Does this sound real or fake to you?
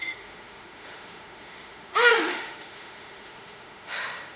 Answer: fake